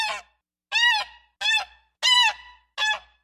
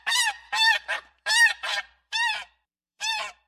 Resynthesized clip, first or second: second